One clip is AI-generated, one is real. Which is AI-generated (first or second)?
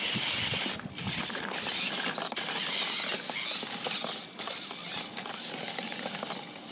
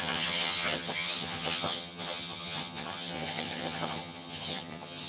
second